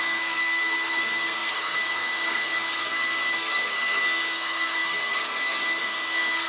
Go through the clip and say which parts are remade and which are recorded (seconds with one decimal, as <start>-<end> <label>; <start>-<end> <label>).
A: 0.0-6.5 remade